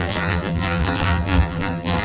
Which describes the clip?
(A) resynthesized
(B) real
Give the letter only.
A